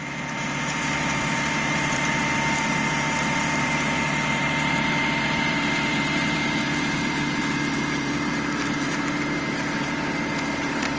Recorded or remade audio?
remade